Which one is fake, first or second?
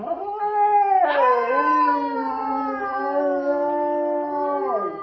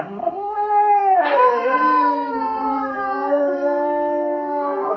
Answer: second